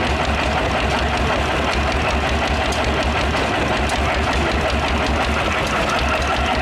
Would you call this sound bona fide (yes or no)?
yes